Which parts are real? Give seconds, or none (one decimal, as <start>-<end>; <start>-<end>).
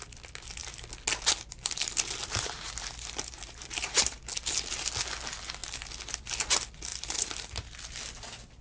0.0-2.2; 4.5-6.9; 7.7-8.6